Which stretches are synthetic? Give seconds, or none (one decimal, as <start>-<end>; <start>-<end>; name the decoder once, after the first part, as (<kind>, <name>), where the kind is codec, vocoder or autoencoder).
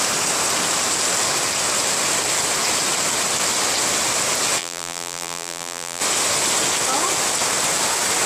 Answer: 4.6-6.0 (vocoder, BigVGAN v2)